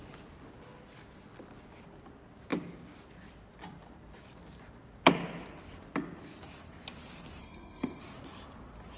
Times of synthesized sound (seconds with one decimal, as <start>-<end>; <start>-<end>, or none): 7.4-8.0

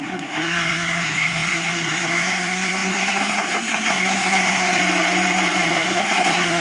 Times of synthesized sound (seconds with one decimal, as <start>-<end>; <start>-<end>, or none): 0.0-4.8; 5.7-6.6

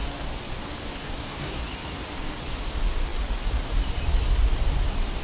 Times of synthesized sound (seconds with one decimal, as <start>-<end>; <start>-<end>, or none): 0.9-1.6

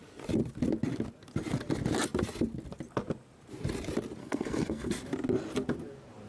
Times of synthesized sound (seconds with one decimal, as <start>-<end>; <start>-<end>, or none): 4.2-4.9

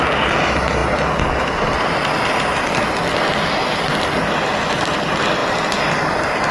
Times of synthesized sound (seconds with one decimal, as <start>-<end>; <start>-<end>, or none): none

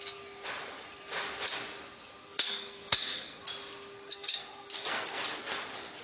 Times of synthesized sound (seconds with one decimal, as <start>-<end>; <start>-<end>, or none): 2.2-3.4; 4.1-5.6

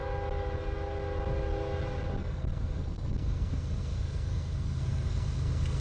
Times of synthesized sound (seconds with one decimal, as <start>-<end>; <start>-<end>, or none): 2.2-5.8